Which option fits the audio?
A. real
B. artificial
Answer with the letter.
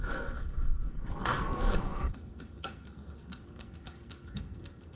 B